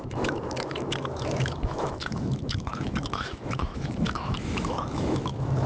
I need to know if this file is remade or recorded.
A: remade